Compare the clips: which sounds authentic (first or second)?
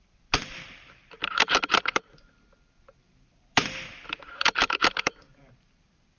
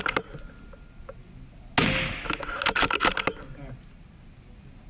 second